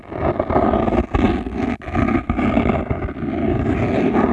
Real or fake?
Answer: real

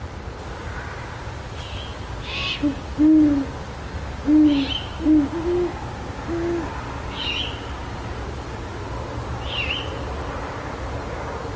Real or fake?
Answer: real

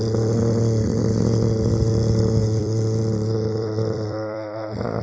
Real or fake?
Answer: fake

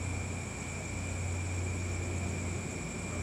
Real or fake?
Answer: real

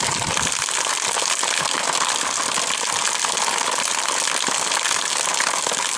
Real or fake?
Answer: real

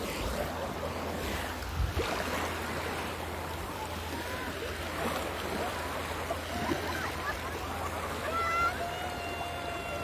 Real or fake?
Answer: real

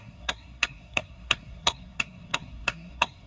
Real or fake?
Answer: fake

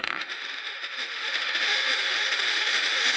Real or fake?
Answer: fake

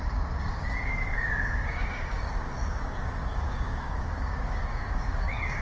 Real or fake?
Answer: fake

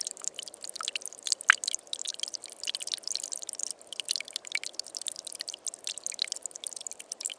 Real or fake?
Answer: real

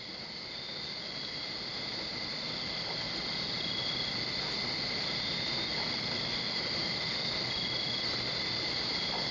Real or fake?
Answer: real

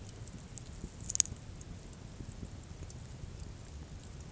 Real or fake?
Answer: real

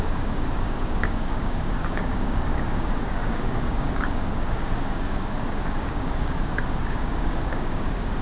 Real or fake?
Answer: fake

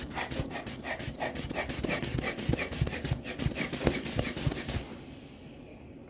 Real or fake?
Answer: real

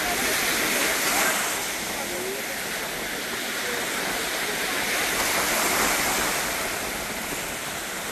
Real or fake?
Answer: real